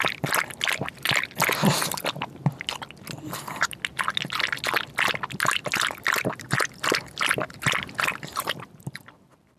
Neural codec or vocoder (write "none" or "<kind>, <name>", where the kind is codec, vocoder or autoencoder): none